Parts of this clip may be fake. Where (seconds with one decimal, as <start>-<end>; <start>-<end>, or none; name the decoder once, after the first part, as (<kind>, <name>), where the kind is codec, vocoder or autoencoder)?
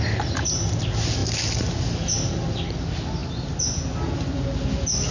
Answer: none